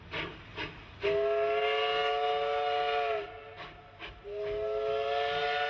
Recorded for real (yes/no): yes